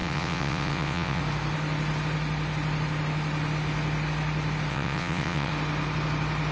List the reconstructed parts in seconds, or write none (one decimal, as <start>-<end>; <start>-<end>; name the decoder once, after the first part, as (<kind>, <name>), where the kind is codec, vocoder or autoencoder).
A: 0.0-1.2 (vocoder, WaveNeXt); 4.7-5.5